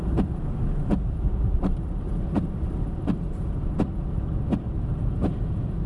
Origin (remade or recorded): recorded